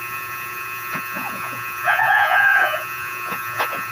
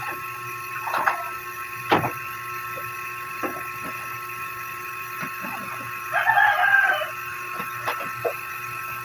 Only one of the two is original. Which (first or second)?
second